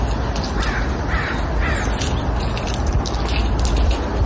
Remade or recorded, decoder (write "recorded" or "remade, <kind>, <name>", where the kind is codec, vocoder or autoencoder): recorded